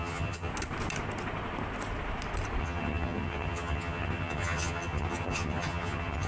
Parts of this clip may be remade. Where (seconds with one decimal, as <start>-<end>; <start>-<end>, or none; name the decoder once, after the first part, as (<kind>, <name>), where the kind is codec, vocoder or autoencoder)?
0.0-0.5 (vocoder, HiFi-GAN); 2.6-6.3